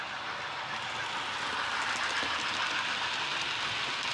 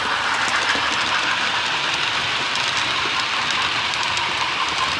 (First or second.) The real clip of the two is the first